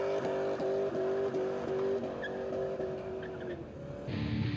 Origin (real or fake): real